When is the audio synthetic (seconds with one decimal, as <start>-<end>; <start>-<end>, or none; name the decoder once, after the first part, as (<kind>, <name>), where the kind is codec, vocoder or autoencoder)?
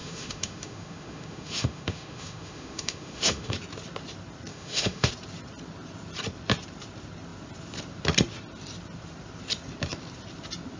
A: 0.0-3.5 (autoencoder, DAC-VAE); 4.5-5.1